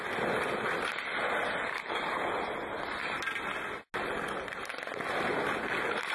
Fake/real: real